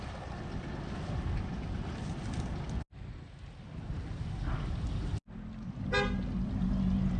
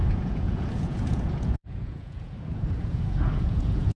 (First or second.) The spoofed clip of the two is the second